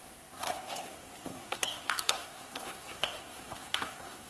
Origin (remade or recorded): remade